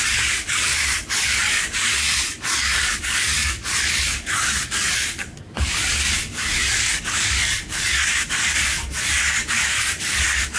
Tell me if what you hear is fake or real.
fake